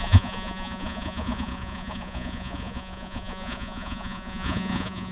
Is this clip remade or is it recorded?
remade